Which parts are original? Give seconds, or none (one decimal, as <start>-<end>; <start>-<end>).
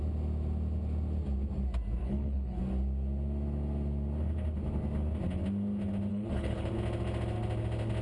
0.0-2.0; 2.6-6.1; 6.7-8.0